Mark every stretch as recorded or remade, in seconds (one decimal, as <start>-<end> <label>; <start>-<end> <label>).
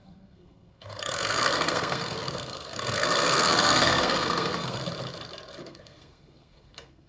0.0-4.8 remade; 4.8-5.6 recorded; 5.6-7.1 remade